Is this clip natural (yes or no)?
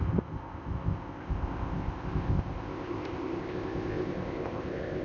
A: no